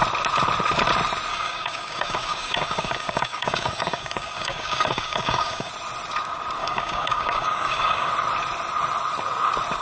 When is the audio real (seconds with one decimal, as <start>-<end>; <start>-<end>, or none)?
0.0-1.3; 5.7-6.6; 8.1-9.8